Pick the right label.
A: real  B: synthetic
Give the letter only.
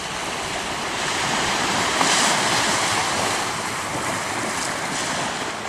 A